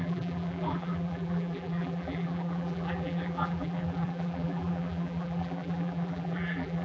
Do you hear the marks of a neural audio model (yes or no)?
yes